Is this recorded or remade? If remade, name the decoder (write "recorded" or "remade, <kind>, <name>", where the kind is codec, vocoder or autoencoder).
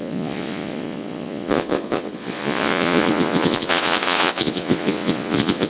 remade, vocoder, Vocos